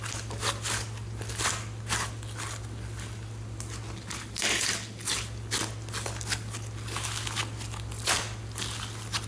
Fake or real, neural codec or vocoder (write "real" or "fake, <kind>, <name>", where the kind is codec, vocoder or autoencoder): real